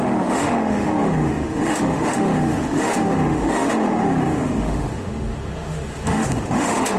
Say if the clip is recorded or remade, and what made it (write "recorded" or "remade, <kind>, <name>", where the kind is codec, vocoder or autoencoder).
remade, autoencoder, DAC-VAE